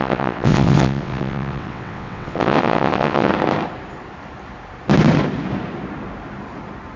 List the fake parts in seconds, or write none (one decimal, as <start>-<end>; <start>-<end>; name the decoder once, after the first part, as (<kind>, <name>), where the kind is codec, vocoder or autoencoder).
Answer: 0.0-3.3 (vocoder, WaveNeXt)